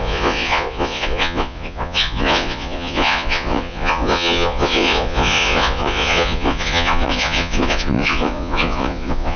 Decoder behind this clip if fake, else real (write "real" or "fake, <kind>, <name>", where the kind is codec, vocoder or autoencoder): fake, vocoder, Vocos